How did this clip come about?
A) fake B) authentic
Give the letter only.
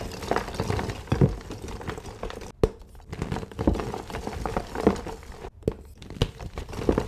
B